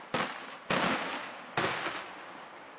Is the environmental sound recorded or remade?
recorded